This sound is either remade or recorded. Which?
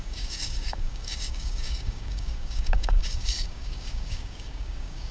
remade